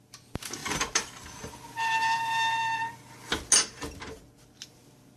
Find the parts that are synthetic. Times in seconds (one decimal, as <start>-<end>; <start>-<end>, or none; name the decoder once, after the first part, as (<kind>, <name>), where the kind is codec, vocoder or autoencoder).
none